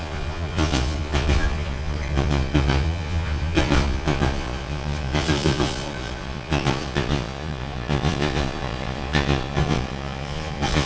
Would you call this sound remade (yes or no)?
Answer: yes